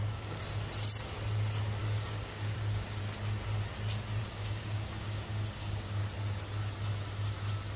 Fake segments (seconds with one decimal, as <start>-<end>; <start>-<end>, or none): 0.0-0.4; 1.8-3.0; 4.2-6.0